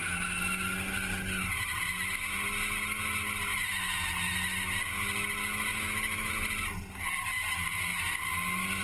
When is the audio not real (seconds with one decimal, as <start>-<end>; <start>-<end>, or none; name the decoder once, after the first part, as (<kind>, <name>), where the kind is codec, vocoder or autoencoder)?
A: 5.7-6.3 (autoencoder, DAC-VAE)